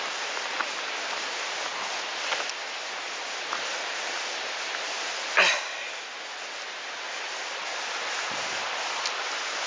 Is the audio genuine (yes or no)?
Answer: yes